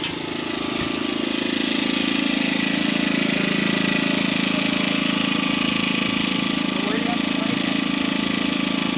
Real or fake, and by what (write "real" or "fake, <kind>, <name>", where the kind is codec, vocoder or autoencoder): real